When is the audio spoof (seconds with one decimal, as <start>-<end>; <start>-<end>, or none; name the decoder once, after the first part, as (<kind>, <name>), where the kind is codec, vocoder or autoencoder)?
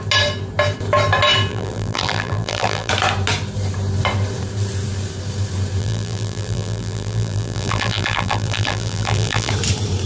1.5-2.9 (vocoder, BigVGAN v2); 5.8-9.5